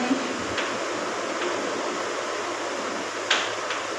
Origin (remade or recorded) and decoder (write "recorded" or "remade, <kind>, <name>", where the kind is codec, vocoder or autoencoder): recorded